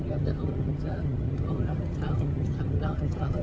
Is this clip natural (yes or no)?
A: no